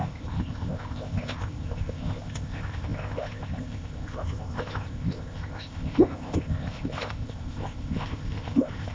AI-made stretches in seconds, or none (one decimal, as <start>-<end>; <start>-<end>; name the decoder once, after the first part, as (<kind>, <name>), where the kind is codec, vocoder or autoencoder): 0.0-8.9 (codec, ZipCodec)